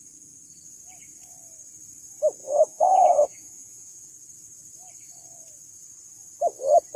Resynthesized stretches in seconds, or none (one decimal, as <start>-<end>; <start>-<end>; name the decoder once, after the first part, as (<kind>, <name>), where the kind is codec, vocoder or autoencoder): 2.4-4.1 (vocoder, Vocos)